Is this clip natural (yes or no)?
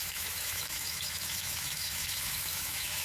no